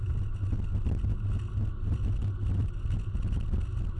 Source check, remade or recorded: recorded